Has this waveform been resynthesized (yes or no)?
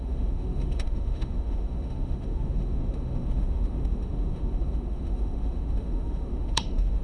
yes